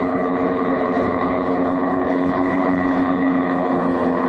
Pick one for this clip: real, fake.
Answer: fake